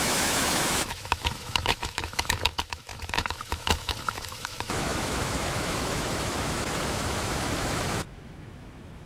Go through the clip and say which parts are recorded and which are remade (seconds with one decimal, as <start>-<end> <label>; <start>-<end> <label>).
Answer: 0.0-9.1 remade